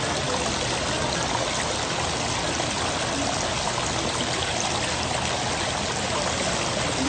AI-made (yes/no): no